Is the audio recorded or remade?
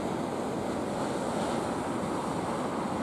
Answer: recorded